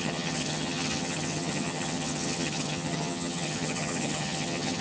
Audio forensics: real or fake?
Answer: fake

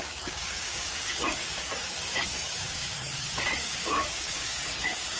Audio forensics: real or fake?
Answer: fake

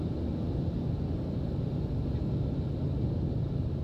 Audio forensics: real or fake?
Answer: real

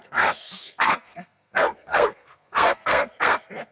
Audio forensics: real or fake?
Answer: fake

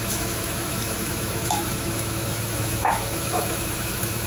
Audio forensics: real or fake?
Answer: fake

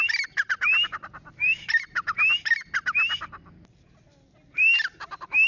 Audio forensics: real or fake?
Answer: real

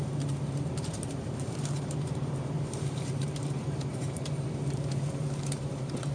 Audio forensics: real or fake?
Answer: fake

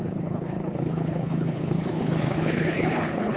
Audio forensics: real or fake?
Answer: fake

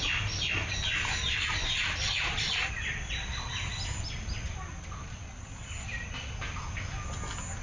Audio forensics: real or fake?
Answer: real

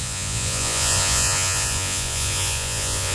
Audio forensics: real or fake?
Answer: fake